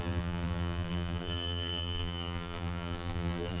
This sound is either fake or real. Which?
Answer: fake